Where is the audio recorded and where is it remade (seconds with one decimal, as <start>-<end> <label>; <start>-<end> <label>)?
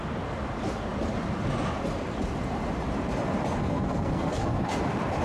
0.0-3.6 recorded; 3.6-4.8 remade; 4.8-5.2 recorded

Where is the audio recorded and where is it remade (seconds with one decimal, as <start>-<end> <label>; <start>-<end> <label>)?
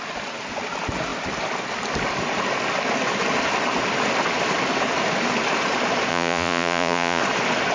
0.0-6.1 recorded; 6.1-7.2 remade; 7.2-7.7 recorded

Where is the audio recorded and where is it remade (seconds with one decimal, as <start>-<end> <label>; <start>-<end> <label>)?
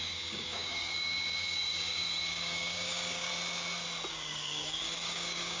0.0-3.3 remade; 3.3-4.1 recorded; 4.1-5.6 remade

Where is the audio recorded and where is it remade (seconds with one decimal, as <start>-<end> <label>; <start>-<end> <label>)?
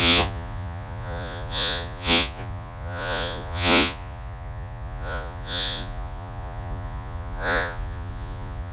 0.0-8.7 remade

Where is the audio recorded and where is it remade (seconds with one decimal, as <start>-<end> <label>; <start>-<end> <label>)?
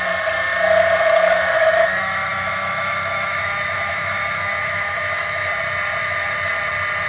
0.0-1.3 recorded; 1.3-5.5 remade; 5.5-6.0 recorded; 6.0-6.5 remade; 6.5-7.1 recorded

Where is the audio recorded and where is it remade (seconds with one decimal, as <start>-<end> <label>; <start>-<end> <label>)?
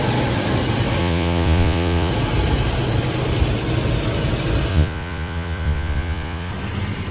0.0-1.0 recorded; 1.0-2.1 remade; 2.1-4.7 recorded; 4.7-6.5 remade; 6.5-7.1 recorded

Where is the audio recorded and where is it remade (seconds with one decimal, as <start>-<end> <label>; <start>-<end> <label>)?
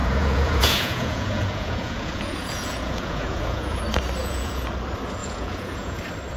0.0-3.8 remade; 3.8-4.2 recorded; 4.2-4.7 remade; 4.7-5.2 recorded; 5.2-6.0 remade; 6.0-6.4 recorded